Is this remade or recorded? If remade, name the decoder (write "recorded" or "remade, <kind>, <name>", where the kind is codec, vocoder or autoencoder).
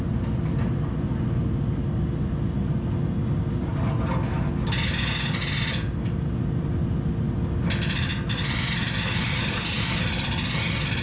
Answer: recorded